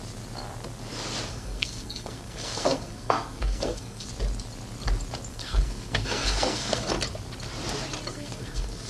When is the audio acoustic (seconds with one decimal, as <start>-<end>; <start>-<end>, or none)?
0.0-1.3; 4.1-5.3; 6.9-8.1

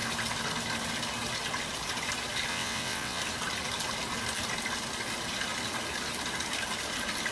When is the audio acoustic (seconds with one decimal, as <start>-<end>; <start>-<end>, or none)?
0.0-2.5; 3.2-7.3

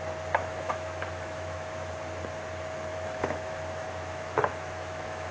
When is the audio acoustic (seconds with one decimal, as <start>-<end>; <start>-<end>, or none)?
0.0-0.4; 1.9-2.9

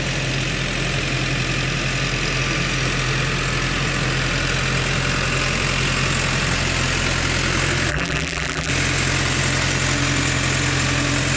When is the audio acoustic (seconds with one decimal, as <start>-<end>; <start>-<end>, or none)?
0.0-7.9; 8.7-11.4